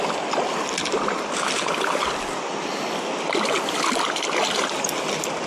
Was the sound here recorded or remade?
recorded